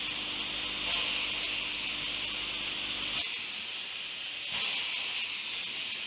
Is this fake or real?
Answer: real